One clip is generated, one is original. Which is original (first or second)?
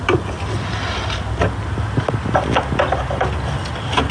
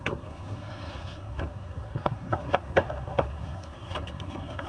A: first